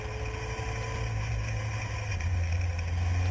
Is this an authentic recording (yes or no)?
yes